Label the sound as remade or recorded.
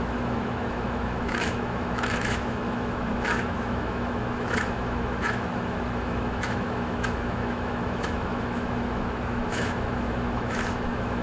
remade